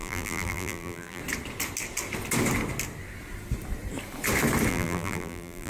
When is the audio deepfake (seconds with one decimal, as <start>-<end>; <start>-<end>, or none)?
0.0-1.2; 4.7-5.7